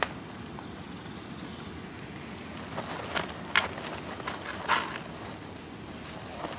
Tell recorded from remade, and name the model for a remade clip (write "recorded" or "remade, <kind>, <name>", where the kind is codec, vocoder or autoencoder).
recorded